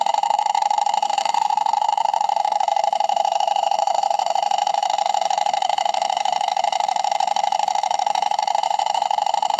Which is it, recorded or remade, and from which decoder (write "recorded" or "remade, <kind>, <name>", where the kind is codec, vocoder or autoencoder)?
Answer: remade, autoencoder, DAC-VAE